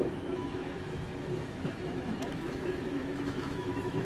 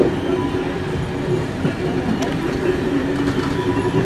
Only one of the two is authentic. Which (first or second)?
second